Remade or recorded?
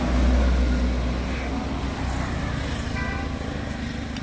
recorded